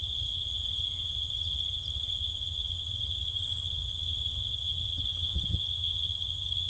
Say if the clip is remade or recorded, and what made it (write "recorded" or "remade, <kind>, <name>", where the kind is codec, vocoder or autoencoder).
remade, vocoder, HiFi-GAN